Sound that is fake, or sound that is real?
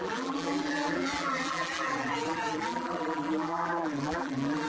fake